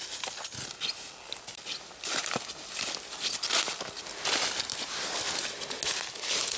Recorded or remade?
recorded